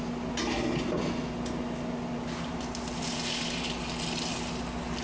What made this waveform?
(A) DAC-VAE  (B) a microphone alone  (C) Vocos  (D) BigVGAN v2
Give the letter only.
B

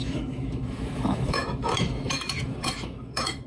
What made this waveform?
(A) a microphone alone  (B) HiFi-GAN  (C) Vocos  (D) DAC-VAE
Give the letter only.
D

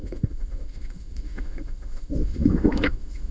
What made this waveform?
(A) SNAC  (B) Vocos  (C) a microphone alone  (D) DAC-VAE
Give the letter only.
D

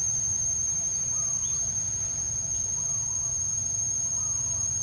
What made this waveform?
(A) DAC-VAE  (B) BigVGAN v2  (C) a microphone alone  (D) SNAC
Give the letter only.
C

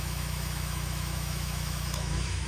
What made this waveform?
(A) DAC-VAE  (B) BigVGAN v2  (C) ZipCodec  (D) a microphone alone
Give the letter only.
A